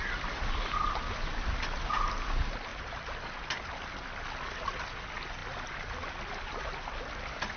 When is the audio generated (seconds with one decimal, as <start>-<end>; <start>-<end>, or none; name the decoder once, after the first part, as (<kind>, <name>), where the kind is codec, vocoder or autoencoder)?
0.0-1.5 (vocoder, BigVGAN v2); 5.4-6.5